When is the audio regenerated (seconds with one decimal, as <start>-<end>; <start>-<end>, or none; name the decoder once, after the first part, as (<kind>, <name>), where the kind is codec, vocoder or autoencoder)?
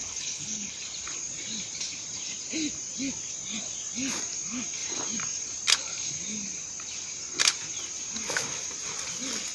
0.0-0.8 (codec, HILCodec)